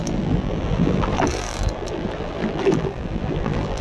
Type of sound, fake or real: fake